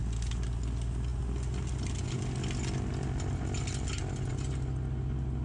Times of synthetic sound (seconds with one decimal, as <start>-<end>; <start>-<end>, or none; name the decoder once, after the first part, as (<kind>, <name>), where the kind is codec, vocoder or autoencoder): none